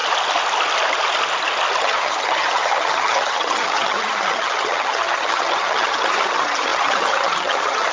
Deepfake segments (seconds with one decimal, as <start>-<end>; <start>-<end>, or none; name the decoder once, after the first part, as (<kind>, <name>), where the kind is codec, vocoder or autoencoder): 1.8-7.9 (vocoder, HiFi-GAN)